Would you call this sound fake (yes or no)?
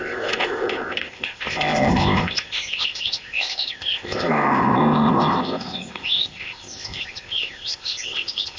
yes